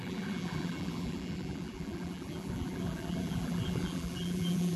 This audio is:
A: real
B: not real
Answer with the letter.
B